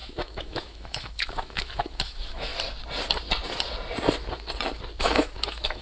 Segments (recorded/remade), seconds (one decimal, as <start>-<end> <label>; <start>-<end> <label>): 0.0-2.5 remade; 2.5-5.0 recorded; 5.0-5.8 remade